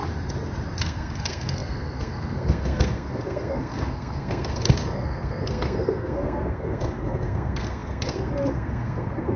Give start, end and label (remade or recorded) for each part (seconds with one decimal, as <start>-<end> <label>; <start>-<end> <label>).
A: 0.0-0.8 recorded; 0.8-9.4 remade